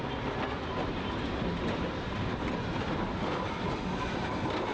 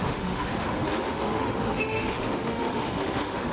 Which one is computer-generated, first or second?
second